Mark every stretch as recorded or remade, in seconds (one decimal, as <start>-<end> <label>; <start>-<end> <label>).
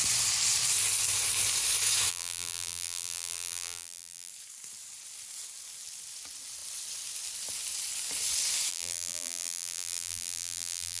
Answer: 0.0-2.1 recorded; 2.1-4.3 remade; 4.3-8.7 recorded; 8.7-11.0 remade